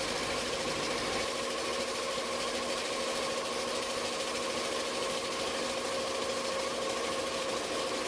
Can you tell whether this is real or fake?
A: real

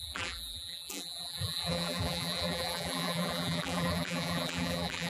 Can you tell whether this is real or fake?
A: fake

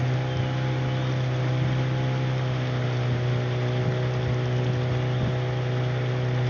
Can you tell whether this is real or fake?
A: real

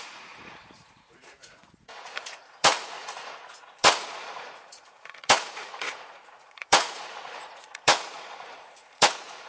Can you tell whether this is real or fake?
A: fake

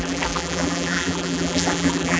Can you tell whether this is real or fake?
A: fake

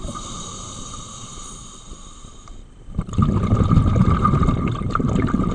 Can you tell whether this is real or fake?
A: fake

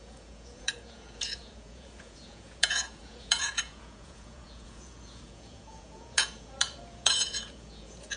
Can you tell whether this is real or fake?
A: fake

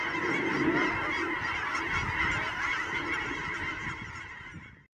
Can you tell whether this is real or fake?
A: real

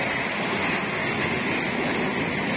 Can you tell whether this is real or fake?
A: real